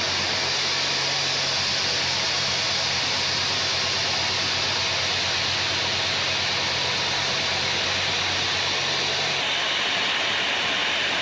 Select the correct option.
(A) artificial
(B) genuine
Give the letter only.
B